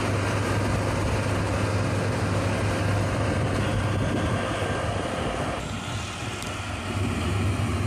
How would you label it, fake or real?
real